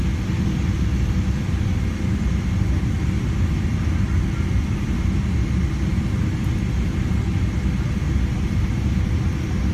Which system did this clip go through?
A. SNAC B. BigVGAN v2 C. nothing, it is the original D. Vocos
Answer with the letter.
C